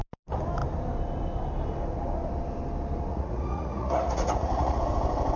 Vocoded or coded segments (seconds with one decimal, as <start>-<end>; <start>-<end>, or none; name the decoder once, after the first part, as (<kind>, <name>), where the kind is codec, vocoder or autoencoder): 3.1-4.8 (vocoder, Vocos)